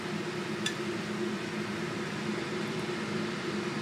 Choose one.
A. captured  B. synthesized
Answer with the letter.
A